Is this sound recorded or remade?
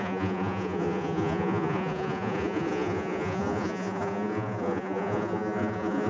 remade